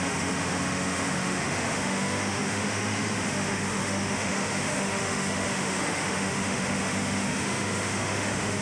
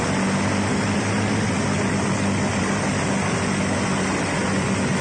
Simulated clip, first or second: first